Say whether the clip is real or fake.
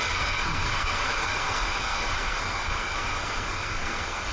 fake